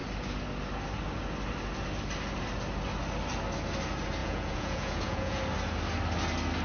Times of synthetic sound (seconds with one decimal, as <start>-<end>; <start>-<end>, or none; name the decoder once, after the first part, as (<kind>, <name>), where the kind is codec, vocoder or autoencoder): 4.2-5.4 (vocoder, Vocos)